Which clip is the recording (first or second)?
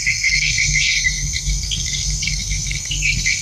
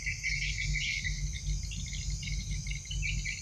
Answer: second